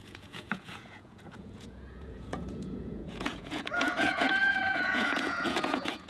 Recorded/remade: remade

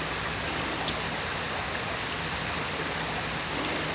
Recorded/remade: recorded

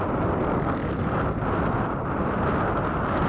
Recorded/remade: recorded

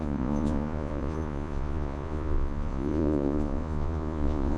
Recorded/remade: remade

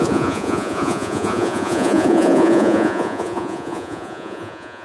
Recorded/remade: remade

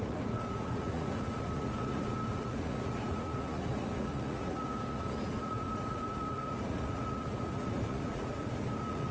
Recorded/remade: remade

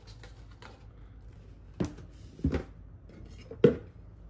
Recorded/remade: recorded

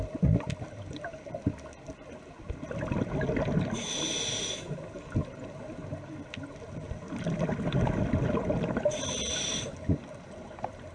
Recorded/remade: recorded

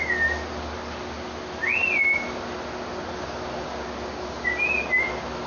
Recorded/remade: recorded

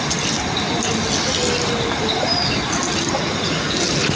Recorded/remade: recorded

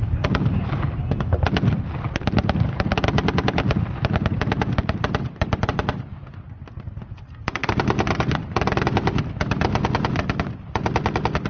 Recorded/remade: recorded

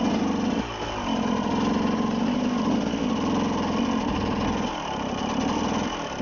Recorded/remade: recorded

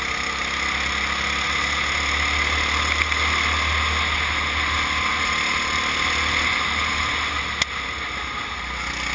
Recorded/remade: recorded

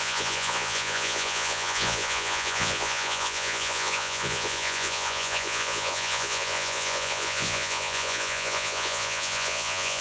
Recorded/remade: remade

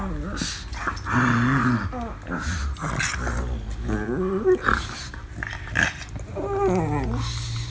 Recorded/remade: recorded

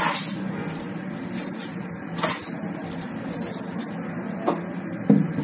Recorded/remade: recorded